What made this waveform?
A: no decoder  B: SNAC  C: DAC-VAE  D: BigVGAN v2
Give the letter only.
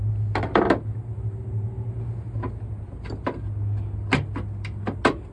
A